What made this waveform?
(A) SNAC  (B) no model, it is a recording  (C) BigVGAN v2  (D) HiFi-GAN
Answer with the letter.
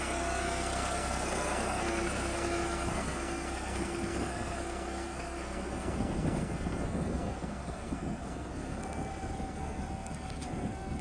A